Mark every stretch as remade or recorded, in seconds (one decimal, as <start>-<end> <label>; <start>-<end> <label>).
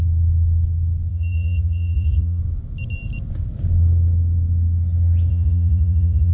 0.0-1.1 recorded; 1.1-2.4 remade; 2.4-5.3 recorded; 5.3-6.3 remade